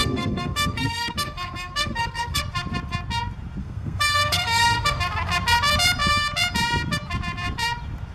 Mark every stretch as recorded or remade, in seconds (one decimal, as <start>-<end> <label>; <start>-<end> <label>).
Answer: 0.0-2.4 remade; 2.4-3.6 recorded; 3.6-5.0 remade; 5.0-8.1 recorded